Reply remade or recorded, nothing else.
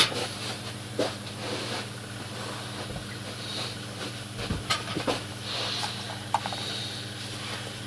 recorded